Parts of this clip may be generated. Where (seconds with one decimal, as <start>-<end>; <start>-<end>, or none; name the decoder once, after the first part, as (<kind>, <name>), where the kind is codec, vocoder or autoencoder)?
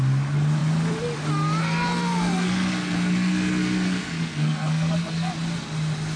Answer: 1.6-5.3 (codec, SNAC)